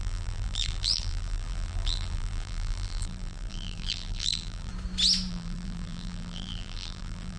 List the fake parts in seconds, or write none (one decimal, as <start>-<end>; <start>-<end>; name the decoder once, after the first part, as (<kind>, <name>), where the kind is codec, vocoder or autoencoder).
0.0-4.7 (vocoder, BigVGAN v2); 5.3-7.4